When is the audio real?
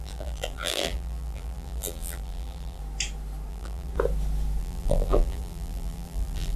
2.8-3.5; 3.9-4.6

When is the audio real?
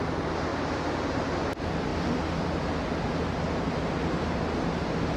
0.0-0.5; 1.4-1.9; 2.7-5.2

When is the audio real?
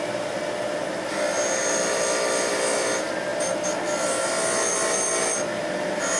0.0-6.2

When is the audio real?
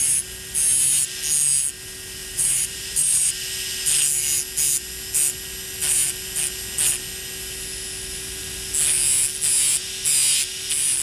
0.0-2.2; 3.3-11.0